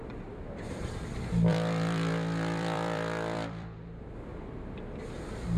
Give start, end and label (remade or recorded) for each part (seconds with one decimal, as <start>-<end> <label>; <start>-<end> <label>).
0.0-1.5 recorded; 1.5-4.0 remade; 4.0-5.6 recorded